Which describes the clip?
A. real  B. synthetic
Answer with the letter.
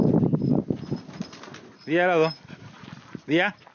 A